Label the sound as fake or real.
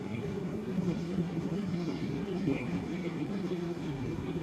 fake